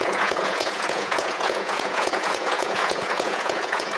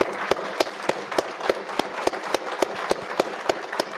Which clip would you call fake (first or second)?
first